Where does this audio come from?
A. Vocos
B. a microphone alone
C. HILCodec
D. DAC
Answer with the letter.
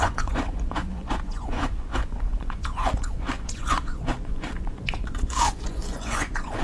A